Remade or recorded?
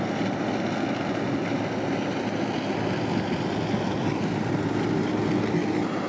recorded